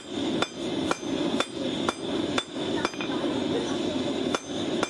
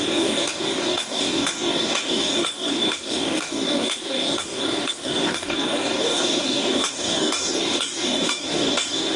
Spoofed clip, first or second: second